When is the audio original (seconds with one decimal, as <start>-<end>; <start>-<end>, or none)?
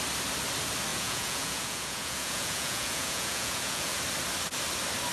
0.0-0.9; 4.0-5.1